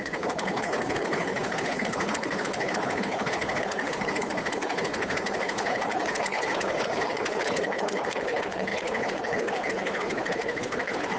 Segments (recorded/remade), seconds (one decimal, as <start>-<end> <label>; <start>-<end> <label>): 0.0-11.2 remade